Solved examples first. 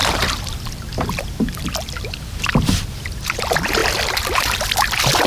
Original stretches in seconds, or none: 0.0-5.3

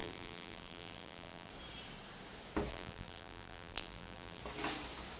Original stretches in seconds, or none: 1.5-2.7; 4.4-5.2

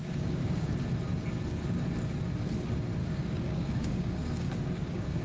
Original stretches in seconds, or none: 0.7-3.0